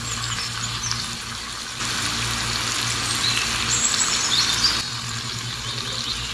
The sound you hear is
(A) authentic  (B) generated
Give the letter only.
A